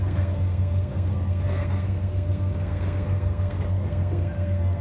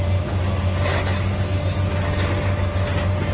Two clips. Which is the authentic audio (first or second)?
second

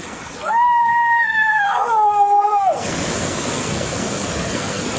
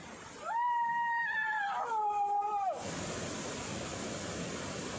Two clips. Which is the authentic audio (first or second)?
second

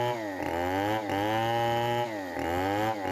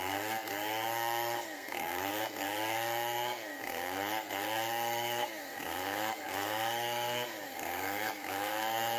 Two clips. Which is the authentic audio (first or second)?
first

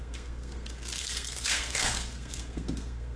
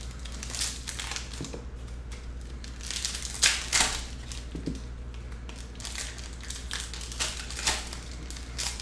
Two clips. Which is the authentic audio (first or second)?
second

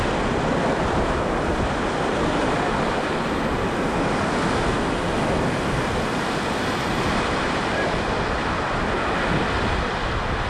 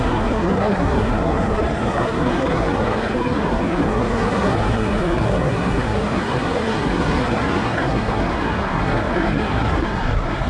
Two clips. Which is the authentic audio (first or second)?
first